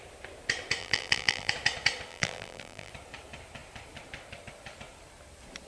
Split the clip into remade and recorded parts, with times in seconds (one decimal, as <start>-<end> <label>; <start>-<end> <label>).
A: 0.0-0.8 recorded; 0.8-1.5 remade; 1.5-2.1 recorded; 2.1-2.9 remade; 2.9-5.7 recorded